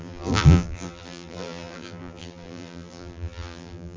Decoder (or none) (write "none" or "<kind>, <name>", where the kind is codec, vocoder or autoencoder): vocoder, BigVGAN v2